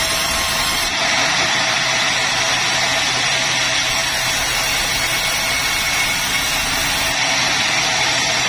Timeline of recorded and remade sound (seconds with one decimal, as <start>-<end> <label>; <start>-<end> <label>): 0.0-4.0 remade; 4.0-7.4 recorded; 7.4-8.5 remade